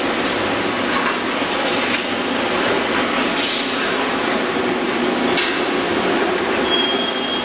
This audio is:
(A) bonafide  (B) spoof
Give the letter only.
A